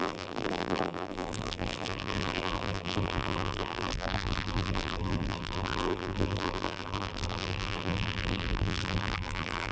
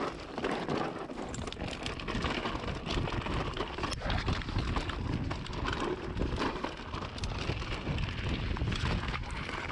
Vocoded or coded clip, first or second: first